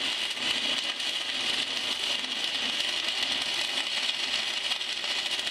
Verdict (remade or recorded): recorded